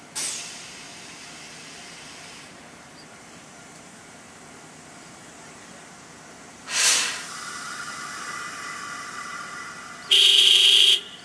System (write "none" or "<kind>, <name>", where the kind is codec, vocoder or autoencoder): vocoder, BigVGAN v2